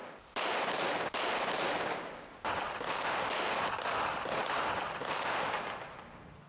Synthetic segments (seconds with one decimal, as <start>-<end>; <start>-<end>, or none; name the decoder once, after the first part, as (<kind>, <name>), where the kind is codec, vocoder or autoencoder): none